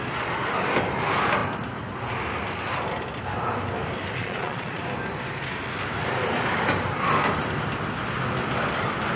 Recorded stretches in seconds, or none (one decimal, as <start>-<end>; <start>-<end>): 0.0-4.2; 4.8-9.2